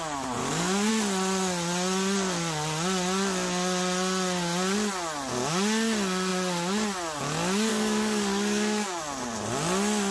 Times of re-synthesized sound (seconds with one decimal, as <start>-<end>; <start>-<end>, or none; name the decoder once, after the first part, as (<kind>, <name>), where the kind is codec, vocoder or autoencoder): 0.4-0.9 (codec, DAC); 7.7-9.0